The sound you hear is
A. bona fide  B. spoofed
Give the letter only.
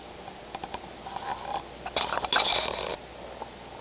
A